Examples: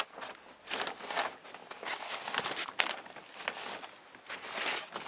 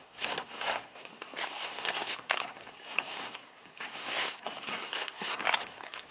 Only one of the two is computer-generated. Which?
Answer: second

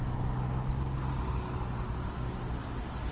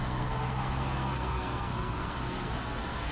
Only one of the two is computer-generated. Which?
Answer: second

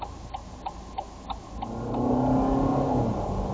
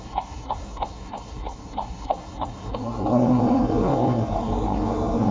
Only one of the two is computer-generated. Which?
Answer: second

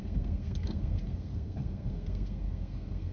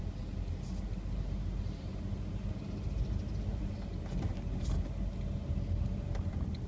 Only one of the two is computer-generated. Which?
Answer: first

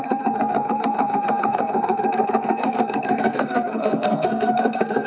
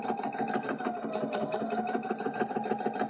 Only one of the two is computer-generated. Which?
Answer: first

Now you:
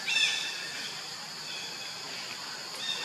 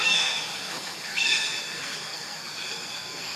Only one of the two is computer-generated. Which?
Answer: second